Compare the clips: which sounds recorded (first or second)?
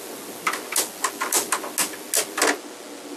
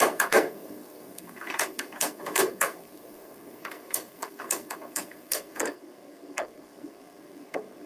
first